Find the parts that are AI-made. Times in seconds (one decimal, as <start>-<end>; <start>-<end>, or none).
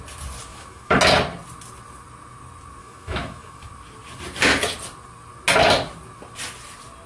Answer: 0.5-1.0; 2.8-3.7